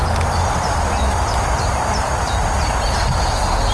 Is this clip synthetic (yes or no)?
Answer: no